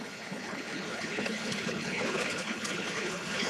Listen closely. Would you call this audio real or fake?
fake